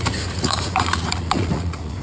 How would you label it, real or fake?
fake